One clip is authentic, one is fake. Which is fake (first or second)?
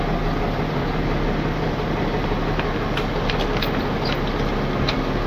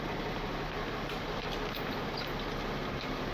second